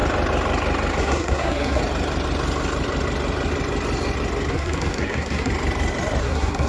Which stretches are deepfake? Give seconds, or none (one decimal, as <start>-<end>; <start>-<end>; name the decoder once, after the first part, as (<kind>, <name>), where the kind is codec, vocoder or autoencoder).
1.0-1.8 (codec, SNAC); 4.5-5.5; 6.2-6.7